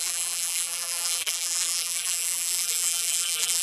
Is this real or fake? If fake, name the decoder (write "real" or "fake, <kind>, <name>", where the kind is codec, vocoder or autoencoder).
fake, vocoder, BigVGAN v2